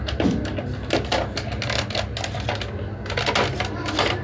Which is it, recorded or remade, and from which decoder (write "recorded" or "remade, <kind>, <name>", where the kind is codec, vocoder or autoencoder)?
recorded